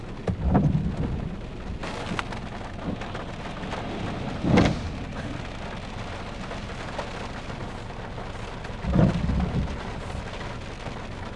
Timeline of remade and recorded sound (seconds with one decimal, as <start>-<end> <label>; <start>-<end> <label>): 0.0-11.4 recorded